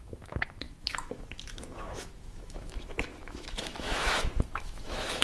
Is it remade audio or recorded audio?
remade